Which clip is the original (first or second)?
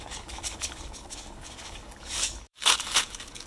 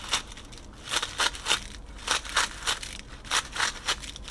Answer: second